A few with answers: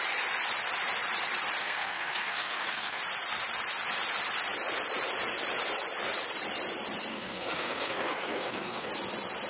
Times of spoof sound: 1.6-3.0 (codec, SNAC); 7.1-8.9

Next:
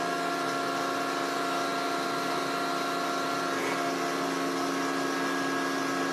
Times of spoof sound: none

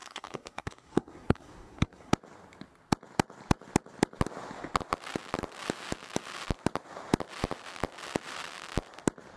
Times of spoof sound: 0.0-2.1 (codec, SNAC)

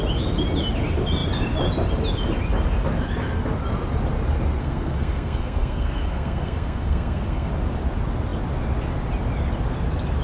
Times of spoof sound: 4.6-7.5 (codec, SNAC)

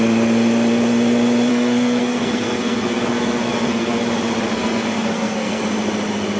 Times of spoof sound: 1.5-4.0 (codec, SNAC); 4.5-5.6